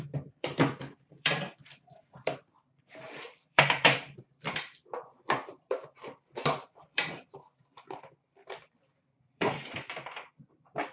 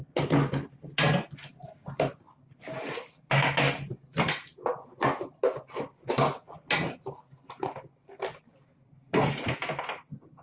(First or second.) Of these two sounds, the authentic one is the second